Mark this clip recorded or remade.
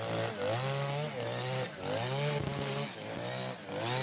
recorded